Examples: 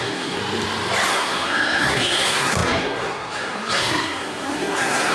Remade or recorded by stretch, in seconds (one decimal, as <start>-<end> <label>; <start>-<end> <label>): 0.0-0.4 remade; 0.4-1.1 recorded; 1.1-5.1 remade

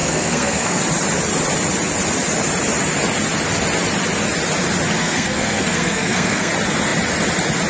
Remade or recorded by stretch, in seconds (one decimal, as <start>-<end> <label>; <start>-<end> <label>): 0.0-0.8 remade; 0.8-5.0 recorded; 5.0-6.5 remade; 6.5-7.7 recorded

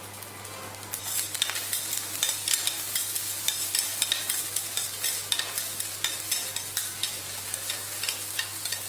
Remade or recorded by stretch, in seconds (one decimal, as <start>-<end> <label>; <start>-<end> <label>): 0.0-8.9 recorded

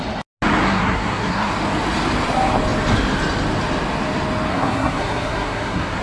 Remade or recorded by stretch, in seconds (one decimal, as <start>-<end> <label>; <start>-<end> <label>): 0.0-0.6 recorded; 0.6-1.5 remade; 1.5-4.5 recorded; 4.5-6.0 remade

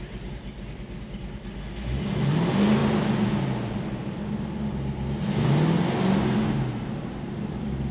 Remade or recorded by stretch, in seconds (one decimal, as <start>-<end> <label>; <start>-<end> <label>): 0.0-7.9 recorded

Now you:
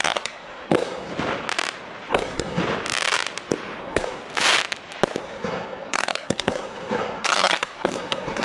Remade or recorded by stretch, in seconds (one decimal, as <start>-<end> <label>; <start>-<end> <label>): 0.0-1.1 remade; 1.1-2.1 recorded; 2.1-2.6 remade; 2.6-3.8 recorded; 3.8-4.2 remade; 4.2-5.2 recorded; 5.2-8.4 remade

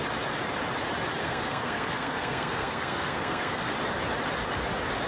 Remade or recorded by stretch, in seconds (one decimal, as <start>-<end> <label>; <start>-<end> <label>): 0.0-1.2 recorded; 1.2-3.7 remade; 3.7-5.1 recorded

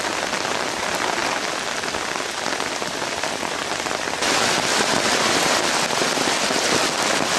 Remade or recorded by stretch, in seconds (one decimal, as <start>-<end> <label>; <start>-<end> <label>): 0.0-7.4 recorded